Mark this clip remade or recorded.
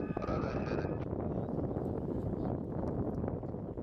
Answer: remade